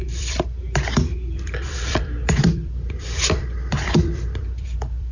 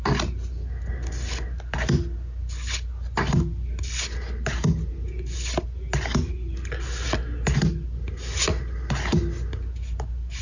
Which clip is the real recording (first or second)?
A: second